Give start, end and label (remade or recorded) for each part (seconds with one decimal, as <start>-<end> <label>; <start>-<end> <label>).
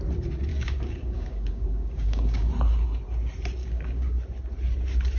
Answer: 0.0-0.5 recorded; 0.5-2.5 remade; 2.5-3.6 recorded; 3.6-4.2 remade; 4.2-5.2 recorded